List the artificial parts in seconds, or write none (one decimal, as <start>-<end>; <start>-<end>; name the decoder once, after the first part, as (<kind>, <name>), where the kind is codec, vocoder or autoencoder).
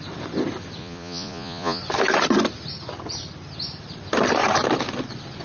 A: 0.8-1.8 (vocoder, Vocos)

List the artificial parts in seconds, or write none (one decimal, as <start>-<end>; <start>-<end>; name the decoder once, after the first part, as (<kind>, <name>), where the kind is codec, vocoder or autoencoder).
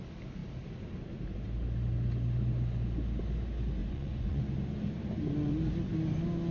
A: 3.8-4.4 (vocoder, Vocos)